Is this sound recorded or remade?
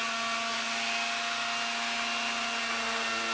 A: recorded